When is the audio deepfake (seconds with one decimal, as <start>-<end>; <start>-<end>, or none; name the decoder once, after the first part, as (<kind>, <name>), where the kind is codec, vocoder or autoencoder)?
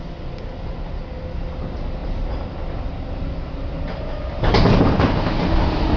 none